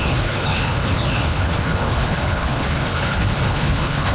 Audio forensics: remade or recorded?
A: remade